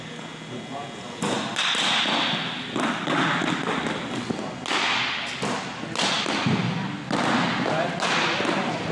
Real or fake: real